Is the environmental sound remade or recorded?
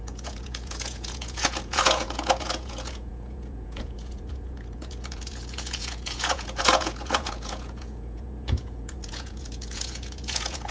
remade